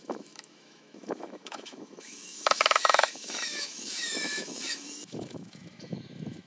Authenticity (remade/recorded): remade